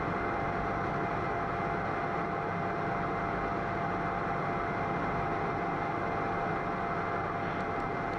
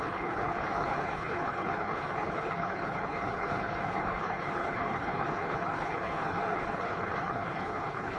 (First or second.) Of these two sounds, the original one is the first